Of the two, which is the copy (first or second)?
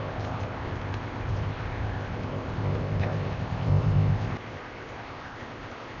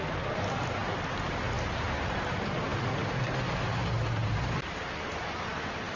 first